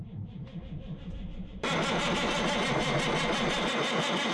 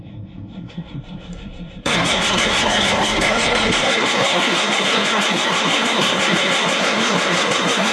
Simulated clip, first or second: second